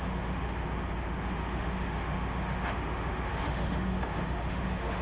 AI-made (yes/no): yes